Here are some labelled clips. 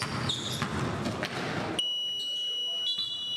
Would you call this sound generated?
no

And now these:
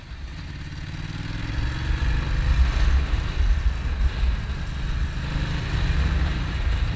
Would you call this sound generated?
no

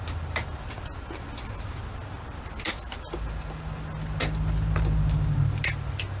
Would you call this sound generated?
no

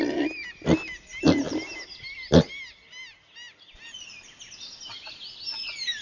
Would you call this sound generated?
no